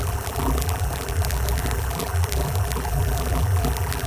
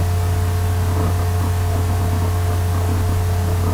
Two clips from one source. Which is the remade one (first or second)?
first